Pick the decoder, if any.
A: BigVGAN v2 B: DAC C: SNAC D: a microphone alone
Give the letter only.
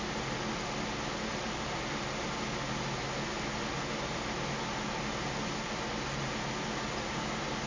D